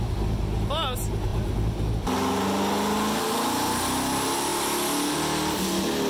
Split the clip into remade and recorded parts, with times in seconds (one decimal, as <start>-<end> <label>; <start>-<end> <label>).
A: 0.0-6.1 recorded